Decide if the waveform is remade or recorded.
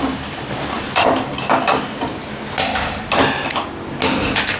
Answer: recorded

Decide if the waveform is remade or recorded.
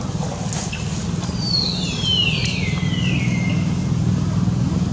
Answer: recorded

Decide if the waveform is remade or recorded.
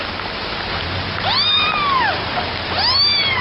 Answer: recorded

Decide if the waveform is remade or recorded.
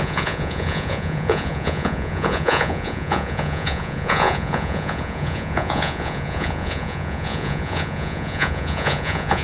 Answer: remade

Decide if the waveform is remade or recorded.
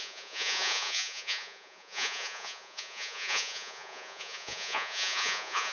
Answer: remade